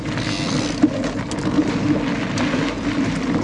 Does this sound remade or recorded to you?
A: recorded